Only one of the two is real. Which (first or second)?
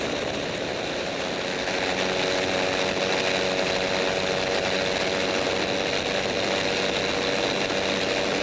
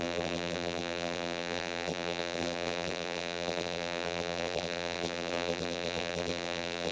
first